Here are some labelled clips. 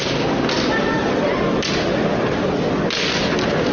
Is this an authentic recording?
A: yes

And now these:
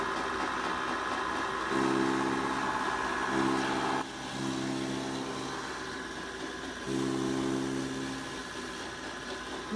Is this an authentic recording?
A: yes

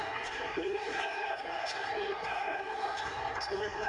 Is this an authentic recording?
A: no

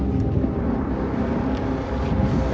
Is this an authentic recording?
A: yes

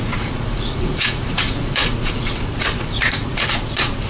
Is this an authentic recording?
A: no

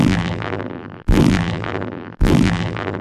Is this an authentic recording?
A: no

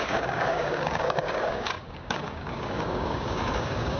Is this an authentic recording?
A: no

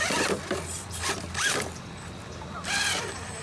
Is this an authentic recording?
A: no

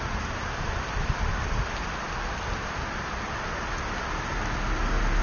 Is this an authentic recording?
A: yes